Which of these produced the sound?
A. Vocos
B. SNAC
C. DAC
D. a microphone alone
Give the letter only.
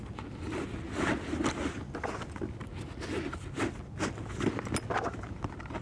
D